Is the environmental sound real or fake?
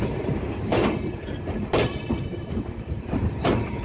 fake